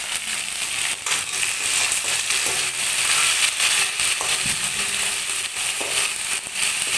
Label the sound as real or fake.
real